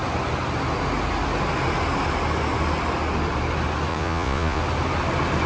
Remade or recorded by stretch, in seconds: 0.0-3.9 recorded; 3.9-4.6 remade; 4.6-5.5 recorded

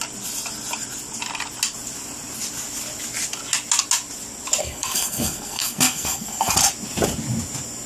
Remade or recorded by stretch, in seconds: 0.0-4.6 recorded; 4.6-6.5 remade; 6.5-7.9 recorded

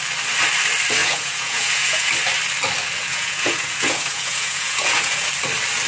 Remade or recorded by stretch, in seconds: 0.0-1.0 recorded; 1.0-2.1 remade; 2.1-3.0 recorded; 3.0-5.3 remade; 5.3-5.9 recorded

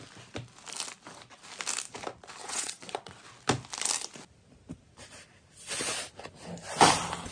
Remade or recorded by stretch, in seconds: 0.0-2.4 recorded; 2.4-3.2 remade; 3.2-7.3 recorded

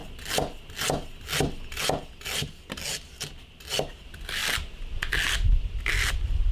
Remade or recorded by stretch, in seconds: 0.0-6.5 recorded

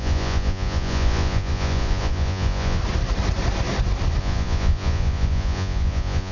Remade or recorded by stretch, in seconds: 0.0-2.8 remade; 2.8-4.2 recorded; 4.2-6.3 remade